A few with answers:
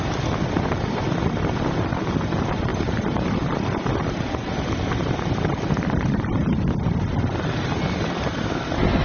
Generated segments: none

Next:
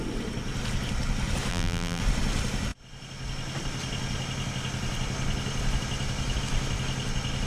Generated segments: 1.5-2.0 (vocoder, BigVGAN v2)